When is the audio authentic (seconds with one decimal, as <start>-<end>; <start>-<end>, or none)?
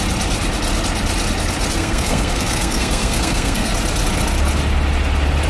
0.0-1.8; 3.7-5.5